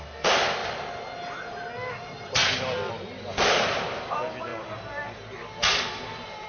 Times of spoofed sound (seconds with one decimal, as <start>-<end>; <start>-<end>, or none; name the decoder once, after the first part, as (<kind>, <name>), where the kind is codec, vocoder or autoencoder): none